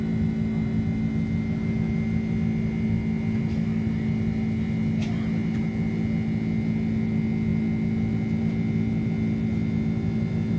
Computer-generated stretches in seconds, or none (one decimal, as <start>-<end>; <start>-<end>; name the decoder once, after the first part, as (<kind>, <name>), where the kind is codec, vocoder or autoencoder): none